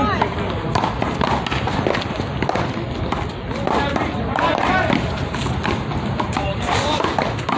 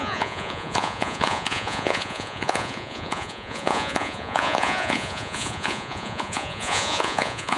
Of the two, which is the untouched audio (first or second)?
first